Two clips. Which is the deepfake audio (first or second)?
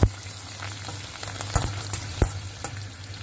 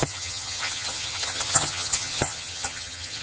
second